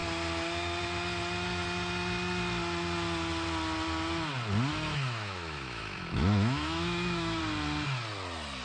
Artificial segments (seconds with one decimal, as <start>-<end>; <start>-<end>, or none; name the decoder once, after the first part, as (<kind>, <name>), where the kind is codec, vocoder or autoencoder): 4.7-7.4 (autoencoder, DAC-VAE)